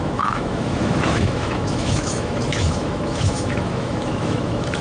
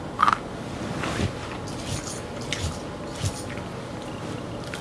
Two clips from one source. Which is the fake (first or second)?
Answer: first